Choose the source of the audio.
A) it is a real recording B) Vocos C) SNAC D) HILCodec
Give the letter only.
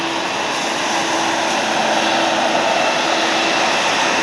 A